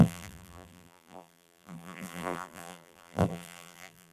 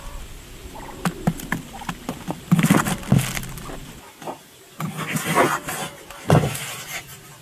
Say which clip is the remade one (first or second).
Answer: first